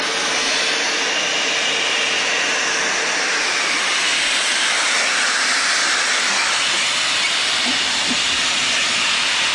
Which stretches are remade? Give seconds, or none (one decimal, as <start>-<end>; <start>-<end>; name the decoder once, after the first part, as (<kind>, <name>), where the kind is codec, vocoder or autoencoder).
none